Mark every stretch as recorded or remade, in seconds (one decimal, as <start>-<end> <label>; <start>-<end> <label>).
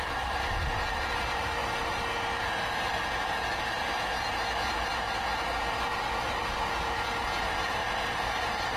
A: 0.0-1.6 remade; 1.6-5.5 recorded; 5.5-8.8 remade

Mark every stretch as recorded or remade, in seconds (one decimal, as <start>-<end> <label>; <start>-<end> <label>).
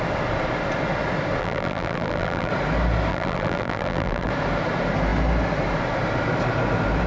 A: 0.0-1.4 recorded; 1.4-2.5 remade; 2.5-3.1 recorded; 3.1-4.3 remade; 4.3-7.1 recorded